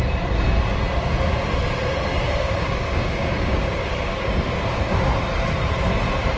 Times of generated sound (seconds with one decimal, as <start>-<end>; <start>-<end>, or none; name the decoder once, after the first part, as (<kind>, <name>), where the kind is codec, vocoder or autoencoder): 2.2-4.3 (codec, DAC)

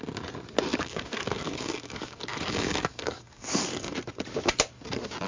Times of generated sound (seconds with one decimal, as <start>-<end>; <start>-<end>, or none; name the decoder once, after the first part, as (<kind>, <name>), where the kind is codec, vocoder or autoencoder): 0.7-3.9 (codec, DAC)

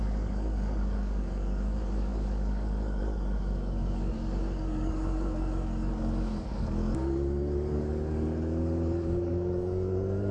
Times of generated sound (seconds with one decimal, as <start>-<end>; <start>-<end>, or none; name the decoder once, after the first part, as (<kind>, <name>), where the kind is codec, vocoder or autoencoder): 0.0-10.3 (codec, DAC)

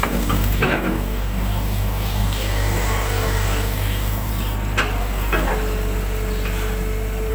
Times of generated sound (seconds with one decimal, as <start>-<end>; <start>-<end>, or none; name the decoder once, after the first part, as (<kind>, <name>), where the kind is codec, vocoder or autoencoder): 0.0-4.3 (codec, DAC); 5.0-5.5

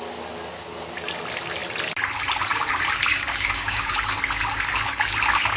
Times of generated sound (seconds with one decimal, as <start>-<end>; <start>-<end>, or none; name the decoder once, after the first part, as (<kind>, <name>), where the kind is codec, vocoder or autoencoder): 3.1-3.9 (codec, DAC)